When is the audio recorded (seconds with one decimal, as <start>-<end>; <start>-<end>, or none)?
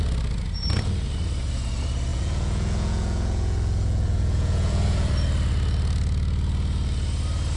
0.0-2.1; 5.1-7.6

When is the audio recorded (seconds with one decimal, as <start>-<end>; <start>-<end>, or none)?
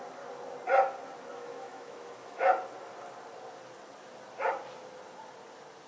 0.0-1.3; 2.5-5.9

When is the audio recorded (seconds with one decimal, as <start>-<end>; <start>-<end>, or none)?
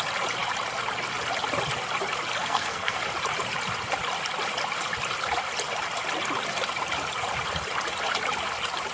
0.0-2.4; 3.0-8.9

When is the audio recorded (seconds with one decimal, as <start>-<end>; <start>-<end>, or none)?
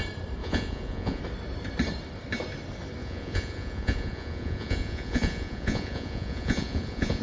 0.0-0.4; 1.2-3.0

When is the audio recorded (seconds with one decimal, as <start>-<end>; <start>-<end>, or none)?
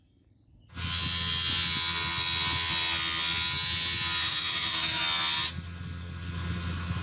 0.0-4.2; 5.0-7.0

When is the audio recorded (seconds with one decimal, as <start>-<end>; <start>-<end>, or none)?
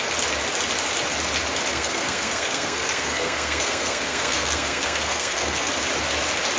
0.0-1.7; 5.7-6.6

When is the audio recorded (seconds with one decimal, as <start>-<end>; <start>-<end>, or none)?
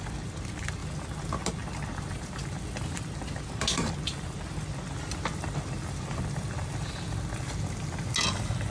0.0-8.7